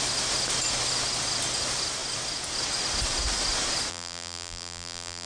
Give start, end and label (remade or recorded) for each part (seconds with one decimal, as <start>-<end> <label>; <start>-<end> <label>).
0.0-3.9 recorded; 3.9-5.3 remade